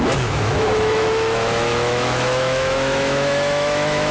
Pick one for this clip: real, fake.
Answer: fake